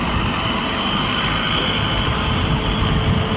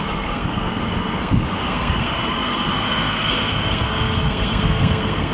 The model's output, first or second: second